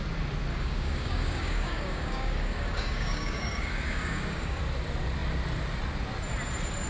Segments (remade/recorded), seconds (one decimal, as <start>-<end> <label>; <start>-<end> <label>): 0.0-0.5 recorded; 0.5-4.6 remade; 4.6-6.9 recorded